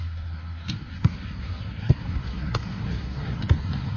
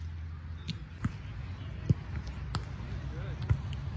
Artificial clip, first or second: first